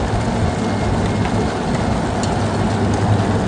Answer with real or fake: real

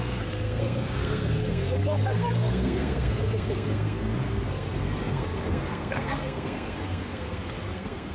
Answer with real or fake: fake